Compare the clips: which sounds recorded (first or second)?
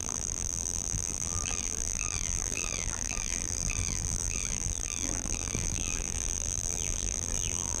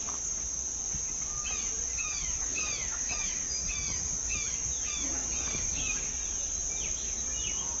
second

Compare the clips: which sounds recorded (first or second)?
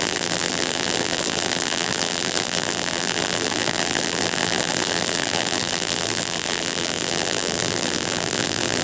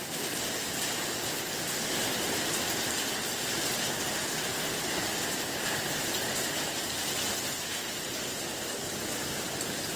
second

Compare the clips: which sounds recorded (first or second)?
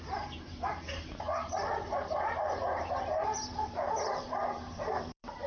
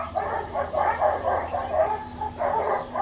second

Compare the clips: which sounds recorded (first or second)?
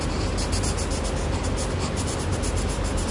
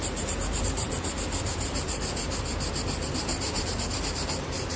first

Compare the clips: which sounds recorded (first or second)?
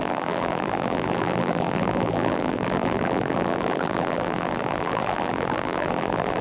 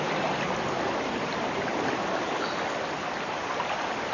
second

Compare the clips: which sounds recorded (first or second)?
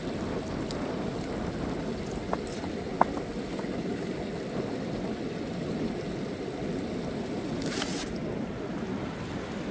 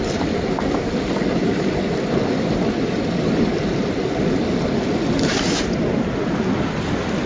first